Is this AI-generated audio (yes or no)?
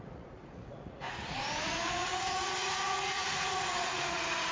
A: yes